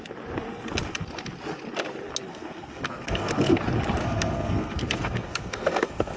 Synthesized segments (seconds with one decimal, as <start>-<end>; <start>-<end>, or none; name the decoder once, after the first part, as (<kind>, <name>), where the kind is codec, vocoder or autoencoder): 2.3-3.6 (codec, SNAC); 4.0-6.2

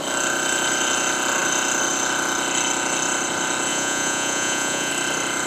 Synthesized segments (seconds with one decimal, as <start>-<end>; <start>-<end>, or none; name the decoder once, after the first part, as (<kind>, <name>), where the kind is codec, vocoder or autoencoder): 3.7-4.9 (vocoder, Vocos)